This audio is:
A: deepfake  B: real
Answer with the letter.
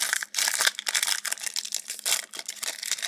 A